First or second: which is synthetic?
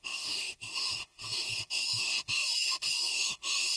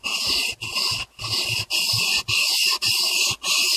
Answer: first